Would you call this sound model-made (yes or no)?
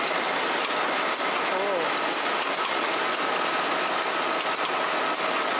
no